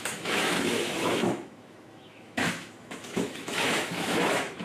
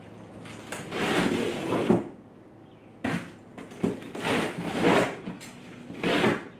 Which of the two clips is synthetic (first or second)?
first